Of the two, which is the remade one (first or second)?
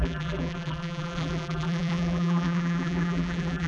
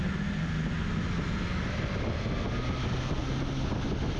first